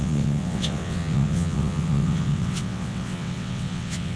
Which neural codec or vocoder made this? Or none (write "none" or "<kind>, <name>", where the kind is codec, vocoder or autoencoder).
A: vocoder, WaveNeXt